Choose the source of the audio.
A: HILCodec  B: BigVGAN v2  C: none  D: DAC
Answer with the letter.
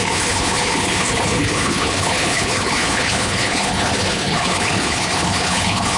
A